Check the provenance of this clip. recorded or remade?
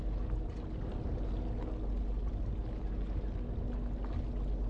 recorded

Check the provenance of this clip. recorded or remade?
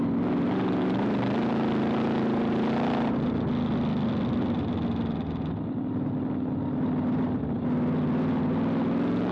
recorded